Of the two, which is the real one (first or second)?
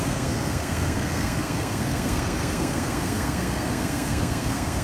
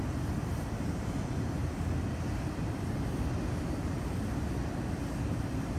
second